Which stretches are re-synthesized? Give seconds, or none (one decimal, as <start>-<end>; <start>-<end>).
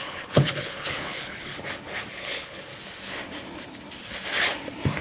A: 0.0-1.5; 2.1-2.7